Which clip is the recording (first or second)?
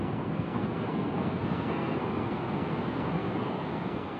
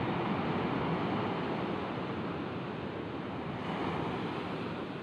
second